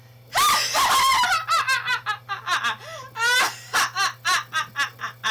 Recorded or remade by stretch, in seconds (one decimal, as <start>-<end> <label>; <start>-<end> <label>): 0.0-5.3 recorded